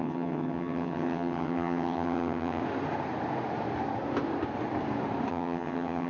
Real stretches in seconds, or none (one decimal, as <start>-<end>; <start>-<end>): 2.6-5.3

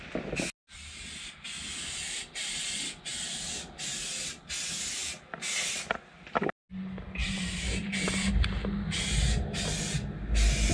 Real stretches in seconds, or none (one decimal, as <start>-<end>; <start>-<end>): 0.0-7.2; 8.3-10.7